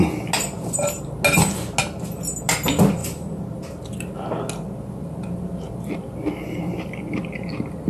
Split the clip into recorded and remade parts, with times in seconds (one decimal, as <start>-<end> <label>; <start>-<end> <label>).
0.0-7.9 recorded